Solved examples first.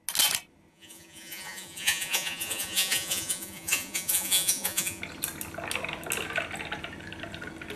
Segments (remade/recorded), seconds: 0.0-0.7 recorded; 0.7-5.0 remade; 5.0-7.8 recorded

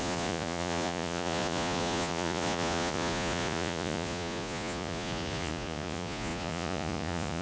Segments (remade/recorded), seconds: 0.0-7.4 remade

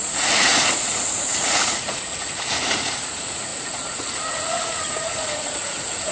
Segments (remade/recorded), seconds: 0.0-6.1 remade

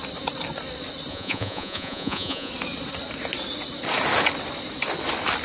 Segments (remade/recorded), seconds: 0.0-1.1 recorded; 1.1-2.5 remade; 2.5-5.4 recorded